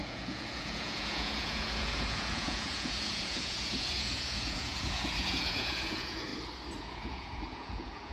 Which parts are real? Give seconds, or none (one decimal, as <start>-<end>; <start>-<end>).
6.3-6.8